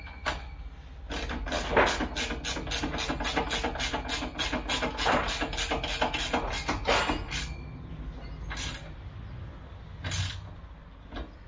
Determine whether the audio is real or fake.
real